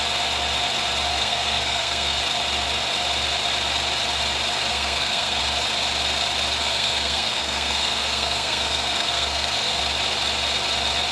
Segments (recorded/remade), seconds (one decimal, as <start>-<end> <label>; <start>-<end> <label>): 0.0-1.1 recorded; 1.1-2.2 remade; 2.2-4.7 recorded; 4.7-5.4 remade; 5.4-6.6 recorded; 6.6-9.8 remade; 9.8-11.1 recorded